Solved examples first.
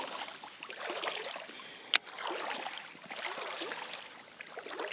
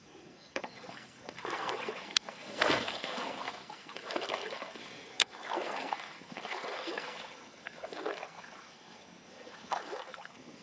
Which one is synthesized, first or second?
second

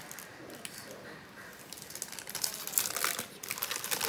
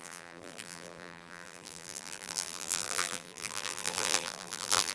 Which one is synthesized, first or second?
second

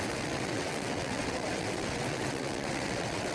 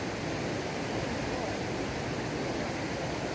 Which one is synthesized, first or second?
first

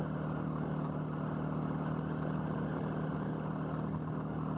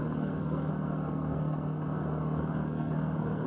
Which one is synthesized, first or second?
second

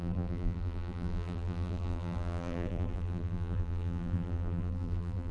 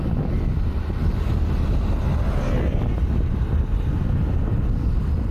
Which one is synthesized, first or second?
first